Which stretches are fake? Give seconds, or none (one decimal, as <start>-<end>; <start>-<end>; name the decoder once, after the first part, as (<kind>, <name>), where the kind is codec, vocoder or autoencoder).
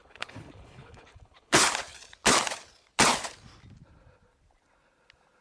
0.0-1.7 (codec, HILCodec)